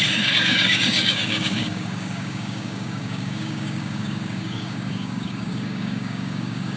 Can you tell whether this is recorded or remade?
remade